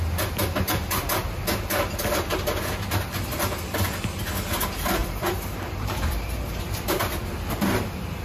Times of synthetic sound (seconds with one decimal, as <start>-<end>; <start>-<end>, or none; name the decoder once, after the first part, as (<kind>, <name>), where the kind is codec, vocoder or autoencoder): 5.0-6.6 (vocoder, BigVGAN v2)